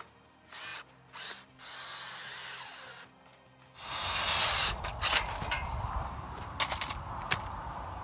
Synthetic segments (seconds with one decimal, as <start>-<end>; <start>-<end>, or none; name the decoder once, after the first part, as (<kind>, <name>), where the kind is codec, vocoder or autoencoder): none

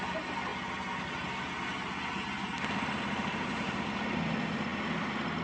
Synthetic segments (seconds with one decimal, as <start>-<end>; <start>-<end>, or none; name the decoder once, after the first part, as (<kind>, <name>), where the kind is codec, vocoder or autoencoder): 3.3-4.0 (vocoder, BigVGAN v2)

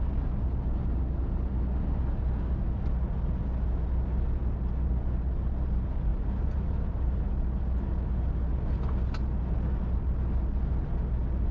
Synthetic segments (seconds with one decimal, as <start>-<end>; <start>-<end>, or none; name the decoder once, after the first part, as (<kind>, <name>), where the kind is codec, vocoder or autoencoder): 6.1-7.2 (vocoder, BigVGAN v2)

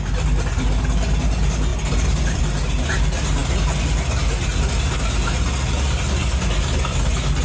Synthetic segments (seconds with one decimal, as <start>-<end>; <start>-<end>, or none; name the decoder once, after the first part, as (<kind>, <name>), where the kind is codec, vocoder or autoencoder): 1.7-2.4 (vocoder, BigVGAN v2); 6.2-6.8

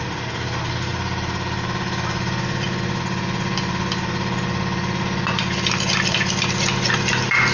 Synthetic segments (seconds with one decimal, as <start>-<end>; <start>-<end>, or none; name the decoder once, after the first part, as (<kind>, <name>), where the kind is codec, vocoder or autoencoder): none

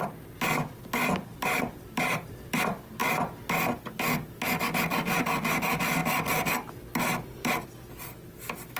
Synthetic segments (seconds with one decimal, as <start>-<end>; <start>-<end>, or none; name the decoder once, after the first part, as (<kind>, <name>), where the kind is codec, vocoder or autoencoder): 1.3-2.6 (vocoder, BigVGAN v2)